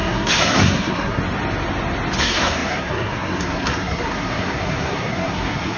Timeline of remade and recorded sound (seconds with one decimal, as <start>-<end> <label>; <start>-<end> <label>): 0.0-1.2 remade; 1.2-2.2 recorded; 2.2-5.8 remade